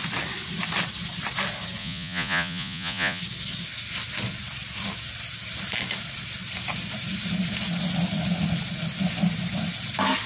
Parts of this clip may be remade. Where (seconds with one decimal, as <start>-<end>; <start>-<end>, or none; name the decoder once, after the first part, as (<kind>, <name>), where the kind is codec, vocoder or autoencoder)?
1.8-3.2 (vocoder, Vocos)